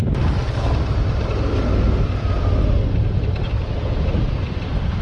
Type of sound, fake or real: real